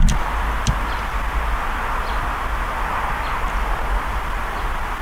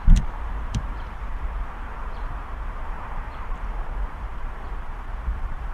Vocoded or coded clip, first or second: second